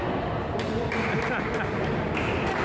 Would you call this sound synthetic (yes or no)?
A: no